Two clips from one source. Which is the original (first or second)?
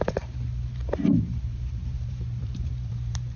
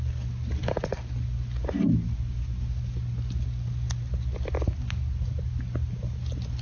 second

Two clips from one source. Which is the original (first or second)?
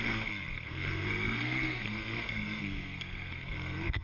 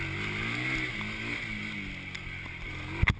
second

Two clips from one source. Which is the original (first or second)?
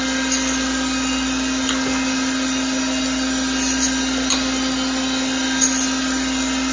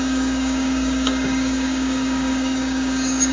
first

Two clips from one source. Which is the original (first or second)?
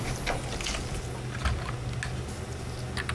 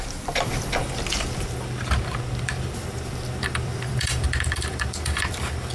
first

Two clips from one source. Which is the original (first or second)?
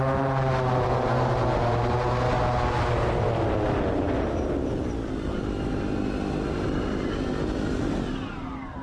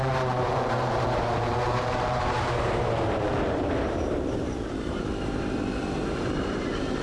first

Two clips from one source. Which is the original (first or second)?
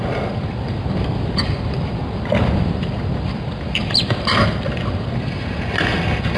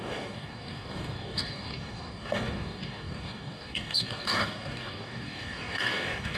first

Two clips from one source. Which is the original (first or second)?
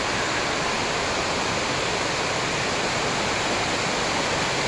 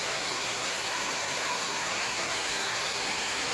first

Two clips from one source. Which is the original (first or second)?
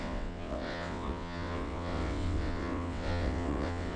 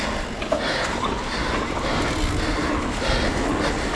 second